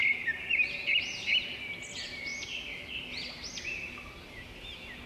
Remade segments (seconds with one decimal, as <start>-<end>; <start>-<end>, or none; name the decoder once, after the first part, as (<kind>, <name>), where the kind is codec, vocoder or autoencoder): 0.0-1.5 (vocoder, BigVGAN v2)